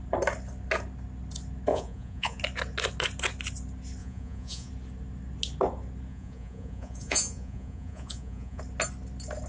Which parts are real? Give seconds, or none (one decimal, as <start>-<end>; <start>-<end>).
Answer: 0.0-1.7; 2.4-4.0; 4.7-6.1; 8.6-9.5